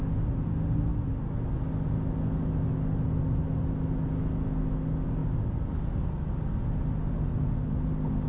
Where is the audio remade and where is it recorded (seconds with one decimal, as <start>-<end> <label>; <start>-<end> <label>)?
0.0-8.3 recorded